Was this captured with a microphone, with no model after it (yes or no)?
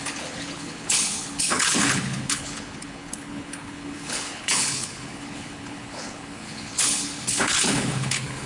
no